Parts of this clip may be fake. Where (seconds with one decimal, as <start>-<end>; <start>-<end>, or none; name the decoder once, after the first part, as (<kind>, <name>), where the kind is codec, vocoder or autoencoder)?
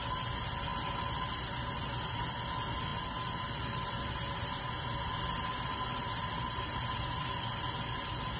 none